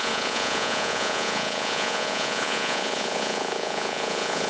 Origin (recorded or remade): remade